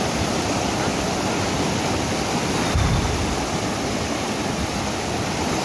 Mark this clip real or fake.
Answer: fake